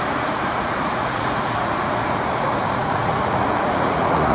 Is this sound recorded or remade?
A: remade